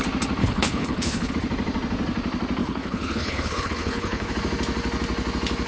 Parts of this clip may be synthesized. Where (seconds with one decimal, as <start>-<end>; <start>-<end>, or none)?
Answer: 0.4-1.3; 2.6-4.3